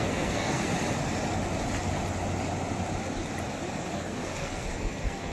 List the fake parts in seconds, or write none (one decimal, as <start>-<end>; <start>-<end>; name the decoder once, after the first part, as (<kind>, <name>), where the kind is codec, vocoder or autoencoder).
0.0-0.7 (codec, SNAC); 3.9-5.3